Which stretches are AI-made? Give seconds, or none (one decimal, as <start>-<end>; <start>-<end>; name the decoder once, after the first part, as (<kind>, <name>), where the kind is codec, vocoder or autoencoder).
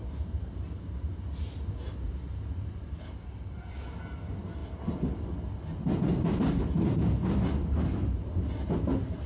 none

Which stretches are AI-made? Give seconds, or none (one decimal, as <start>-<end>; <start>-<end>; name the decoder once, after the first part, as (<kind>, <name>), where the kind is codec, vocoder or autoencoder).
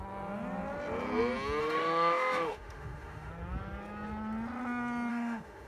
1.6-3.3 (autoencoder, DAC-VAE); 5.1-5.7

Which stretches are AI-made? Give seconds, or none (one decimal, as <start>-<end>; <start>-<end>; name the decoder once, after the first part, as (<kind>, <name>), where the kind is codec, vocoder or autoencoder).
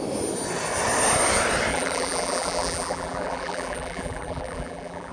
1.7-5.1 (vocoder, BigVGAN v2)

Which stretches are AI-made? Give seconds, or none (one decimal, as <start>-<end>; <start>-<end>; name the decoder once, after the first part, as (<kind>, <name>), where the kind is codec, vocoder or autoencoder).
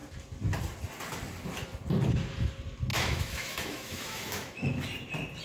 2.9-4.8 (autoencoder, DAC-VAE)